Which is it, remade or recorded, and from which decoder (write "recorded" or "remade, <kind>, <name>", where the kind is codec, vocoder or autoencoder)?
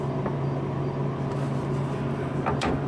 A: remade, vocoder, BigVGAN v2